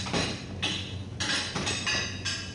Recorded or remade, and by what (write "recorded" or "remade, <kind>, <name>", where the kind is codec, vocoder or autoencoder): recorded